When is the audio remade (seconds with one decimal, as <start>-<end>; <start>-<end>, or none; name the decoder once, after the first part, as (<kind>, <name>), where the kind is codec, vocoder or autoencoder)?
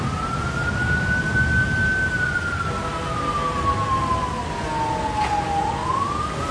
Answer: none